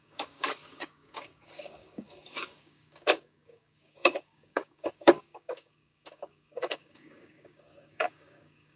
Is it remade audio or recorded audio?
remade